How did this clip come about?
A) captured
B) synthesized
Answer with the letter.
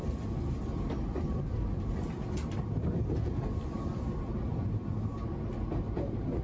A